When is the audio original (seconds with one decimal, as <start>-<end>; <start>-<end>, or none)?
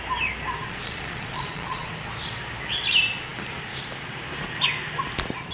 0.0-0.6; 1.9-5.5